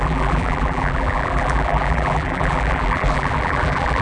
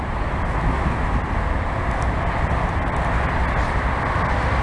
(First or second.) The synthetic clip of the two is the first